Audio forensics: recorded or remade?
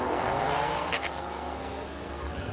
remade